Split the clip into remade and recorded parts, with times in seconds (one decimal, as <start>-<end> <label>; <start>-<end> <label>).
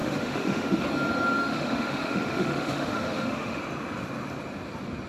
0.0-0.8 remade; 0.8-1.4 recorded; 1.4-3.6 remade; 3.6-5.1 recorded